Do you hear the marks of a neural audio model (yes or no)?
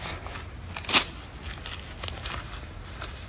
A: no